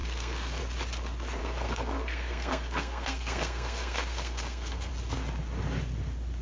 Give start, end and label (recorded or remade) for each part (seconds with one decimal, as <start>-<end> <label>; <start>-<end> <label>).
0.0-0.6 remade; 0.6-1.4 recorded; 1.4-4.9 remade; 4.9-6.4 recorded